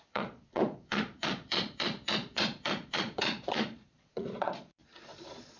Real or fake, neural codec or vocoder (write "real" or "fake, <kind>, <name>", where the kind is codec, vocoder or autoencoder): fake, vocoder, Vocos